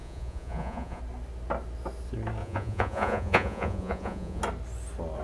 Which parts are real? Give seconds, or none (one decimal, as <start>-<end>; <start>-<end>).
1.0-2.4; 4.4-5.2